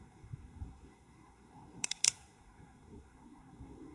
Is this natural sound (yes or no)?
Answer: no